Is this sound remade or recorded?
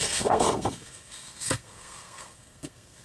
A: remade